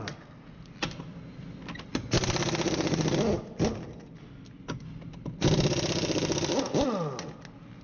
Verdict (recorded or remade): recorded